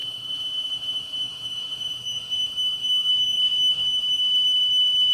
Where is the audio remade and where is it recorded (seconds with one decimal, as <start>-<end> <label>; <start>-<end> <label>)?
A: 0.0-5.1 remade